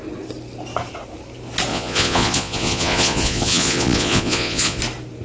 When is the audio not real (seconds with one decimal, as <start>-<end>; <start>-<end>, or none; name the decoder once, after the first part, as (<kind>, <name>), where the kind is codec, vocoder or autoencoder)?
1.7-4.8 (vocoder, Vocos)